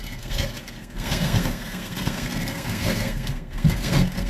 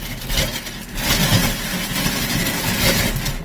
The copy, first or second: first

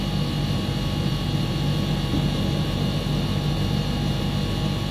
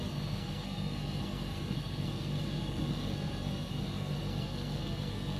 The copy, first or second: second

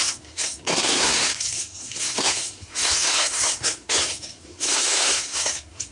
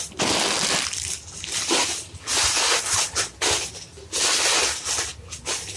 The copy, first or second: first